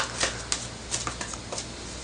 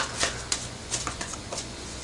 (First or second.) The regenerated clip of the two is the second